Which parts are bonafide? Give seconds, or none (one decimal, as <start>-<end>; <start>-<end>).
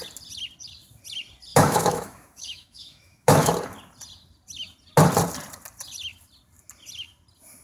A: 0.0-1.5; 3.5-7.6